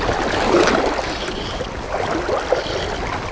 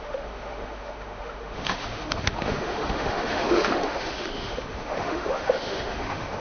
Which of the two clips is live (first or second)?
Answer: first